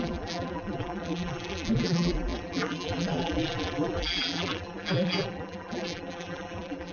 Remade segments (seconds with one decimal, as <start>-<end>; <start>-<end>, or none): 0.0-6.9